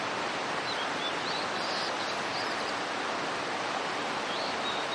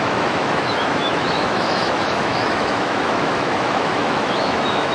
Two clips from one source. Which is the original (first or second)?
first